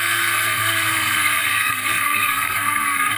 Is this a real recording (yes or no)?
no